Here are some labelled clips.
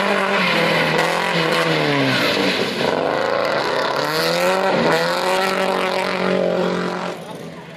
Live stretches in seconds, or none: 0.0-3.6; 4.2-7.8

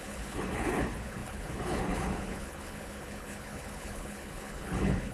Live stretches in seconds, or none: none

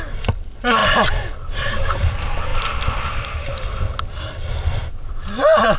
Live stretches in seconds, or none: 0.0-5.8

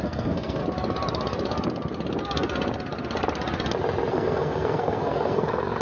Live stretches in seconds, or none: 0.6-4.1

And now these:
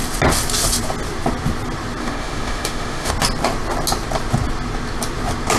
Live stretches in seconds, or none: 0.0-2.0; 3.1-5.6

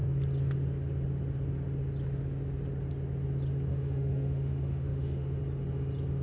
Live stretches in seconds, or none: 0.0-3.7; 5.4-6.2